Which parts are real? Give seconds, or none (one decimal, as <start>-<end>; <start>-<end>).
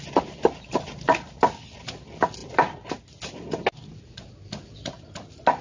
0.0-5.6